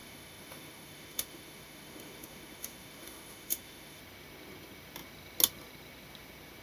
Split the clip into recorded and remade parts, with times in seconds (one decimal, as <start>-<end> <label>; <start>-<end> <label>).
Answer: 0.0-4.0 remade; 4.0-6.6 recorded